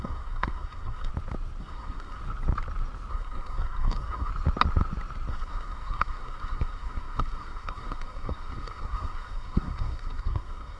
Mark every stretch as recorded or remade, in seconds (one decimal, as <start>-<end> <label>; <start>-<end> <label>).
0.0-1.1 remade; 1.1-1.6 recorded; 1.6-2.2 remade; 2.2-3.1 recorded; 3.1-4.3 remade; 4.3-5.3 recorded; 5.3-10.8 remade